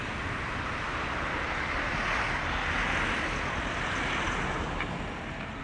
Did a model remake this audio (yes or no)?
no